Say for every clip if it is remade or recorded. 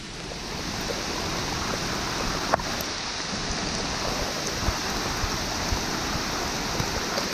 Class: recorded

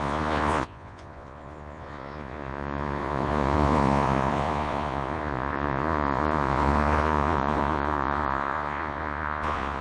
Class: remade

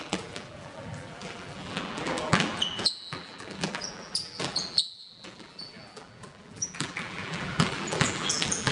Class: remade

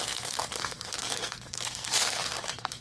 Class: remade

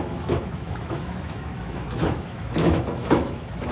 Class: remade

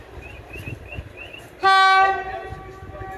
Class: recorded